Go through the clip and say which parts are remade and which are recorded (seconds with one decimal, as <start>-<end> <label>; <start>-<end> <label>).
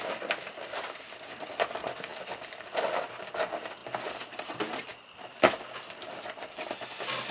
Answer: 0.0-4.9 recorded; 4.9-5.9 remade; 5.9-7.3 recorded